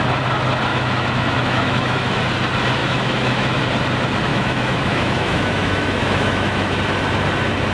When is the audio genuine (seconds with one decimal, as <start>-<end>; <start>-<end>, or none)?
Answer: 0.0-0.7; 2.2-2.8; 3.6-4.3; 6.7-7.7